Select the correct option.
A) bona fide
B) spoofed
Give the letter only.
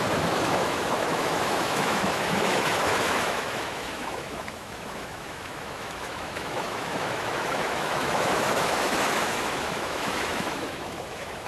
B